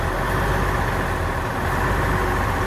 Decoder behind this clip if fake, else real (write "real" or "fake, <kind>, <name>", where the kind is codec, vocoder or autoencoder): real